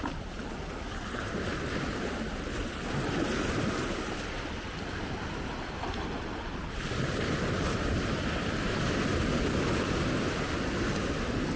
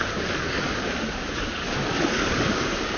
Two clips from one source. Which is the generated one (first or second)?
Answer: second